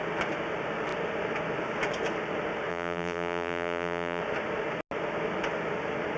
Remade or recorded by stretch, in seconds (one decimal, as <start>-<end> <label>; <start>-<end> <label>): 0.0-2.7 recorded; 2.7-4.2 remade; 4.2-6.2 recorded